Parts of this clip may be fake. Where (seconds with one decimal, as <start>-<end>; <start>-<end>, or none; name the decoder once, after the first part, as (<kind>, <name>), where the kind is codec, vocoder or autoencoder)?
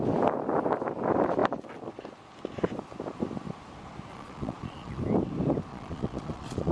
4.1-5.0 (vocoder, Vocos); 5.7-6.7